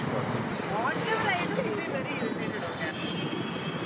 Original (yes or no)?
yes